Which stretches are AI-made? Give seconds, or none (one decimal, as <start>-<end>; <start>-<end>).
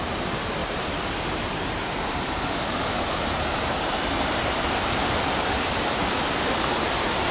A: 0.6-4.9